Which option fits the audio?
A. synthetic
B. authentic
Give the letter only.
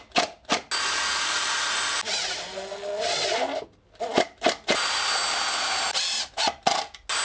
B